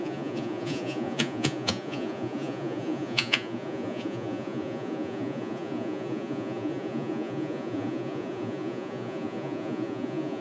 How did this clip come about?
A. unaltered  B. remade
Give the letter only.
B